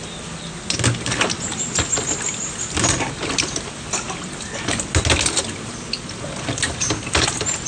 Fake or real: real